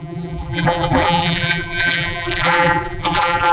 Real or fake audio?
fake